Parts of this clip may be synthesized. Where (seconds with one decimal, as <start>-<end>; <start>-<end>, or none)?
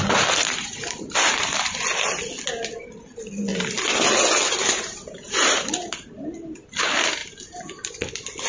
0.4-1.8; 4.6-6.2; 7.2-7.9